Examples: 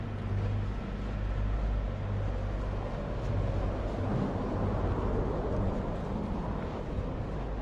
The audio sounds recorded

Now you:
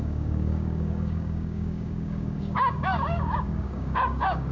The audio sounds remade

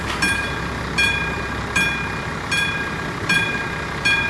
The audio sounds recorded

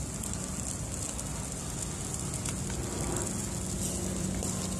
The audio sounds recorded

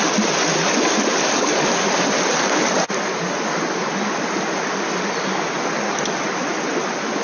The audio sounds recorded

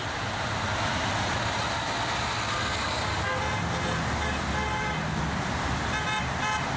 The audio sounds recorded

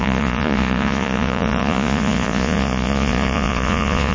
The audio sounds remade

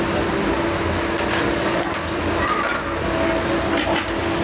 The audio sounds recorded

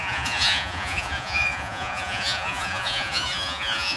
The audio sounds remade